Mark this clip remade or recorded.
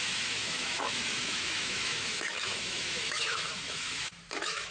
remade